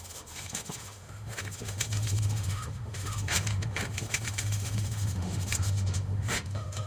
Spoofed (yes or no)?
yes